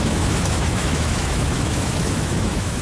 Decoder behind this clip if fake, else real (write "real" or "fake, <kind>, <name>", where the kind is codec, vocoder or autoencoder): fake, autoencoder, DAC-VAE